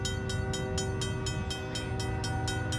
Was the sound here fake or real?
real